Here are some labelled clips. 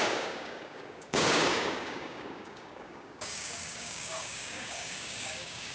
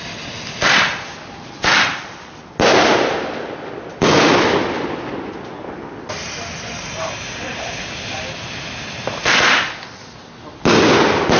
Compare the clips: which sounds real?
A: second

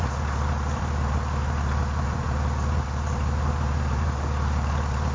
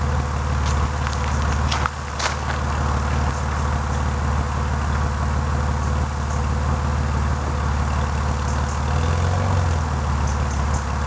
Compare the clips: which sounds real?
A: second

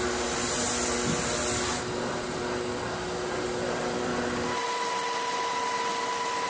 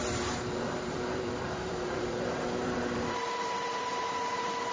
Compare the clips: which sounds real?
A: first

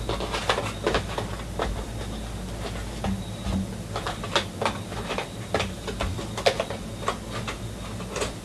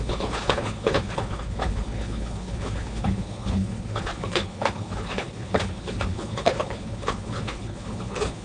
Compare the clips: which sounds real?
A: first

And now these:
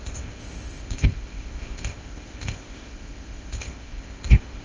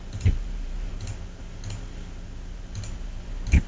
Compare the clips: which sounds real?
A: second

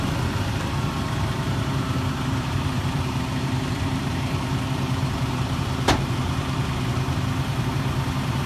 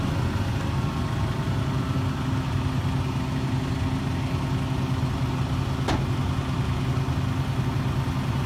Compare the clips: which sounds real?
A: second